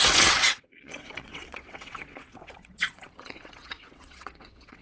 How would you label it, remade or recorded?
remade